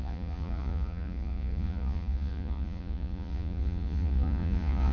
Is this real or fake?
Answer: fake